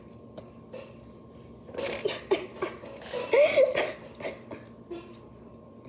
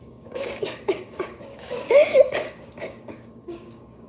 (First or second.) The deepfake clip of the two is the second